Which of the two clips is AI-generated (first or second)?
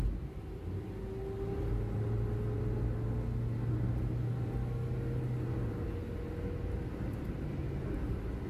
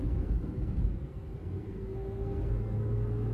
second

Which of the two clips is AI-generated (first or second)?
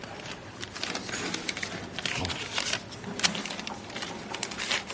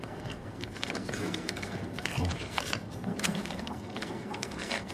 second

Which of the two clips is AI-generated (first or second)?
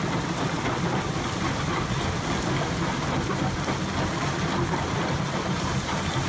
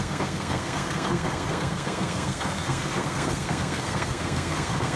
second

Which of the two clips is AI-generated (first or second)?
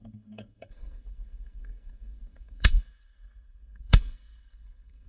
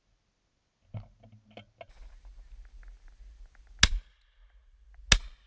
first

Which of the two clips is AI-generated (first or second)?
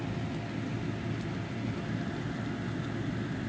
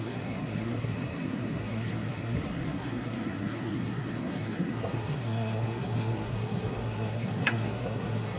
second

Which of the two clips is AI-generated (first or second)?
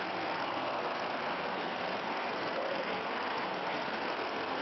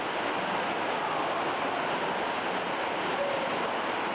first